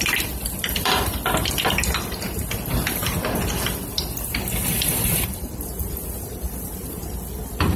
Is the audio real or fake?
fake